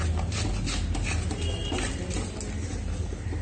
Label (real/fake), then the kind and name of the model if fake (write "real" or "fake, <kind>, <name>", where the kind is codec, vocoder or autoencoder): real